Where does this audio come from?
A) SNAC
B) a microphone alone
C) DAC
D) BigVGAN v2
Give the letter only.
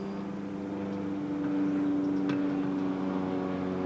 B